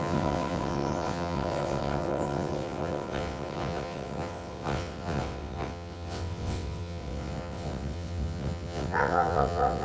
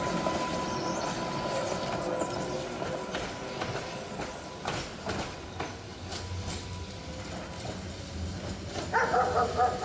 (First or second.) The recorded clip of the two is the second